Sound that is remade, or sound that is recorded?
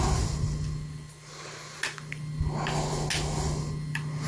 recorded